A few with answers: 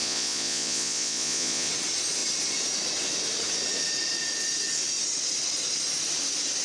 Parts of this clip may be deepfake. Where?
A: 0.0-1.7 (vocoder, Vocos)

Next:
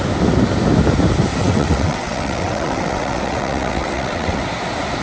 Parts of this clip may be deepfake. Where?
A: 1.4-4.4 (vocoder, WaveNeXt)

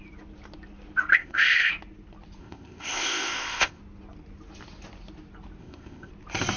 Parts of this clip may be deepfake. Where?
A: 1.1-1.7 (codec, ZipCodec); 2.4-3.8; 5.6-6.1

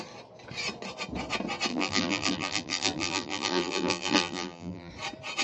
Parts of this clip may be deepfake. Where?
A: 1.7-4.9 (vocoder, BigVGAN v2)

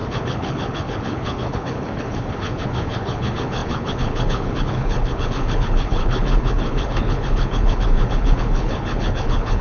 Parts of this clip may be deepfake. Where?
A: 0.0-9.6 (codec, HILCodec)

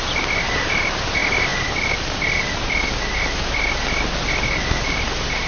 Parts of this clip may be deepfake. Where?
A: none

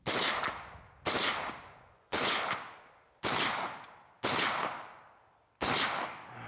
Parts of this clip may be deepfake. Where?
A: 1.6-2.4 (vocoder, Vocos)